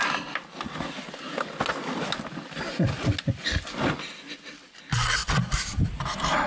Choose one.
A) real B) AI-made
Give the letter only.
A